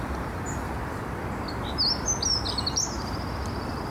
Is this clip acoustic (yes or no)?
yes